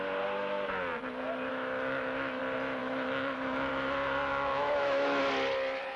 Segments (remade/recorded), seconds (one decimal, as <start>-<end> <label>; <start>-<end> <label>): 0.0-1.5 recorded; 1.5-2.4 remade; 2.4-2.8 recorded; 2.8-3.7 remade; 3.7-4.3 recorded; 4.3-5.2 remade; 5.2-6.0 recorded